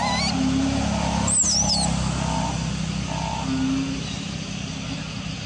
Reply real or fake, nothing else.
real